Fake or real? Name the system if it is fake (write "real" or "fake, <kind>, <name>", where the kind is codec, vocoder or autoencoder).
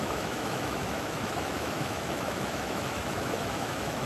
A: fake, autoencoder, DAC-VAE